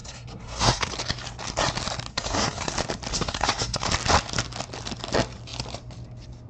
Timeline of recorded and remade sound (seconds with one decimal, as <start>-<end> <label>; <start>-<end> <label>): 0.0-0.9 remade; 0.9-2.1 recorded; 2.1-2.7 remade; 2.7-3.1 recorded; 3.1-3.9 remade; 3.9-6.5 recorded